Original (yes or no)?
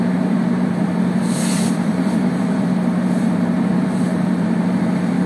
no